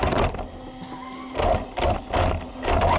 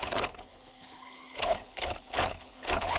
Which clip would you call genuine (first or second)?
first